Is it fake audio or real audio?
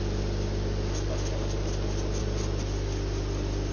real